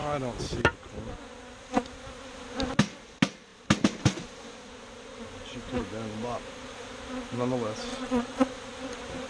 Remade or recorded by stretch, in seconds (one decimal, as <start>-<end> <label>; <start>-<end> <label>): 0.0-7.9 recorded; 7.9-8.5 remade; 8.5-9.3 recorded